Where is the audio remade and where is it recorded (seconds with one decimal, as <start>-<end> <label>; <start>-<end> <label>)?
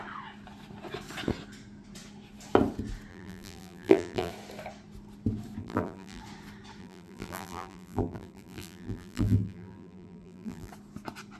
0.0-3.1 recorded; 3.1-4.3 remade; 4.3-5.6 recorded; 5.6-6.2 remade; 6.2-6.8 recorded; 6.8-10.7 remade; 10.7-11.4 recorded